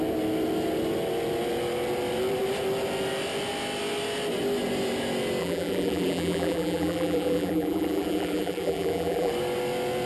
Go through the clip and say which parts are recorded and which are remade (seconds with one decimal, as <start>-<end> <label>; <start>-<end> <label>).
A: 0.0-5.4 recorded; 5.4-9.3 remade; 9.3-10.1 recorded